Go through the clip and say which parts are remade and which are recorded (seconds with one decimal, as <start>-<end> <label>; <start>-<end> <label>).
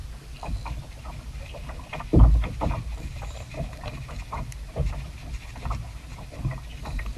0.0-1.4 recorded; 1.4-2.1 remade; 2.1-2.7 recorded; 2.7-4.8 remade; 4.8-6.2 recorded; 6.2-7.2 remade